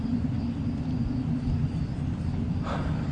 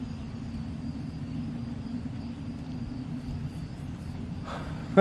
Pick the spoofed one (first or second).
second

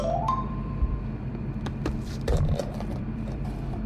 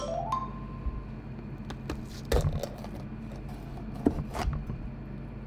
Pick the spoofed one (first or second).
first